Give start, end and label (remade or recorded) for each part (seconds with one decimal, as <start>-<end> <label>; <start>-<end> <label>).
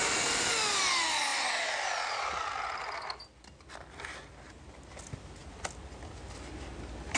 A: 0.0-7.2 recorded